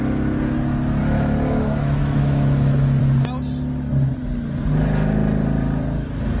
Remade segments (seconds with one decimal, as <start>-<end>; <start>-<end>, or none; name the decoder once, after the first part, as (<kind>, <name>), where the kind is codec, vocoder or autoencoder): 1.0-3.0 (autoencoder, DAC-VAE)